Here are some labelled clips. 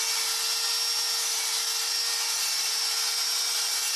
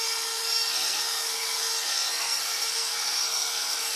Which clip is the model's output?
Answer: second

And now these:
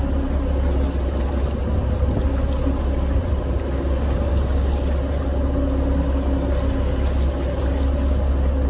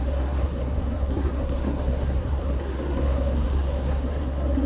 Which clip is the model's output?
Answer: second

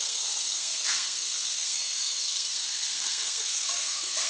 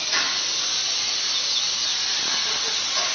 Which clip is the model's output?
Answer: first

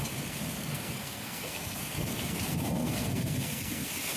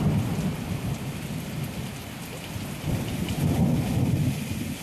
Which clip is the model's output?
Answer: first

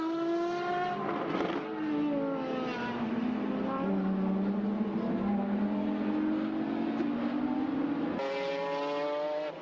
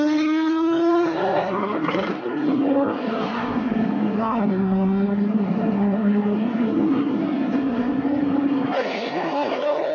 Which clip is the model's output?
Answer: second